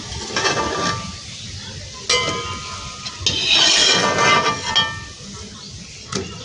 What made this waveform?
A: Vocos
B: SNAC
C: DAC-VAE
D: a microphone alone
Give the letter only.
D